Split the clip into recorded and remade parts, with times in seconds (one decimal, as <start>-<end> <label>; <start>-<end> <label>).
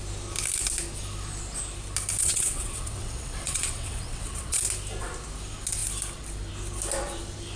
0.0-2.2 recorded; 2.2-4.6 remade; 4.6-7.6 recorded